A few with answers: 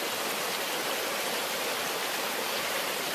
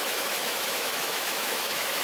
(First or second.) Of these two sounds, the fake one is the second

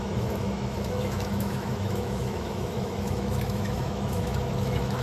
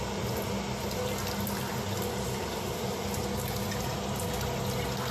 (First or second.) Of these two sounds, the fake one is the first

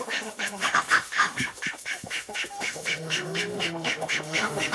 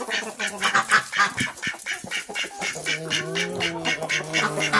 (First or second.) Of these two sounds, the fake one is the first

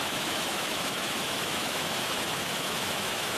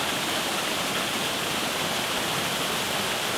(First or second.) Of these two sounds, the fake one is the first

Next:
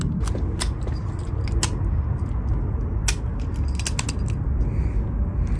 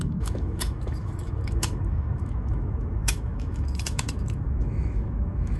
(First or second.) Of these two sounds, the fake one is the second